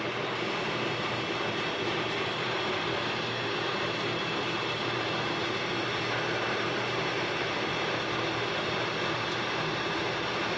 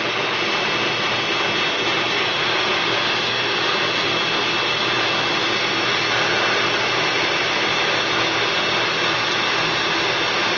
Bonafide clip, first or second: second